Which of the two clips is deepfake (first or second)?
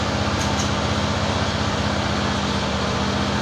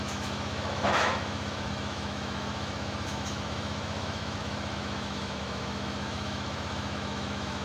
second